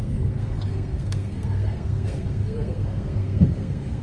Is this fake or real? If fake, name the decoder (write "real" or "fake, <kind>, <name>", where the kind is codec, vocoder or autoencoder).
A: fake, codec, SNAC